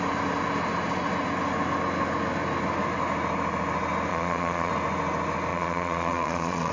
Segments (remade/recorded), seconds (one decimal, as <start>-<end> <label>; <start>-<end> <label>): 0.0-4.1 recorded; 4.1-4.7 remade; 4.7-5.5 recorded; 5.5-6.7 remade